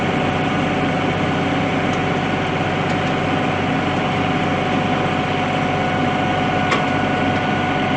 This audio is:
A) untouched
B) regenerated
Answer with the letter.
A